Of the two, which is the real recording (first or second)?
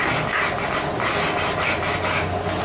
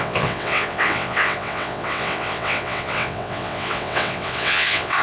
first